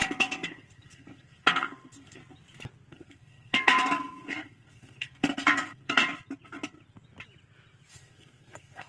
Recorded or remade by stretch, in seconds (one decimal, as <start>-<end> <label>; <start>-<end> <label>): 0.0-2.2 remade; 2.2-2.9 recorded; 2.9-6.0 remade; 6.0-7.9 recorded; 7.9-8.9 remade